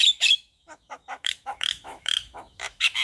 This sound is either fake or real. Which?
fake